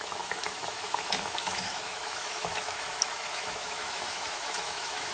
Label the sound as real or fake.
fake